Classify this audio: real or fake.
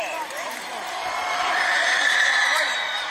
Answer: fake